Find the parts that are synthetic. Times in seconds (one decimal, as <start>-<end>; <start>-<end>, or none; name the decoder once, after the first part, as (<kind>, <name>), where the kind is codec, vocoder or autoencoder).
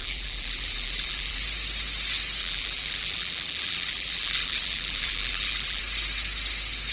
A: 0.0-1.4 (vocoder, BigVGAN v2); 2.4-5.8